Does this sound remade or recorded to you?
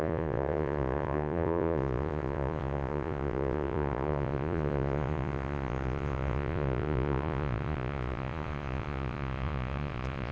remade